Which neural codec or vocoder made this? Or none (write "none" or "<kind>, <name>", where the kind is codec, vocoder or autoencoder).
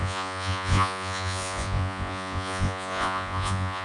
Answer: vocoder, Vocos